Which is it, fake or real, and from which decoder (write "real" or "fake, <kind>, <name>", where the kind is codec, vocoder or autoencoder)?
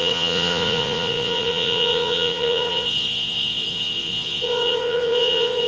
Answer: fake, vocoder, Vocos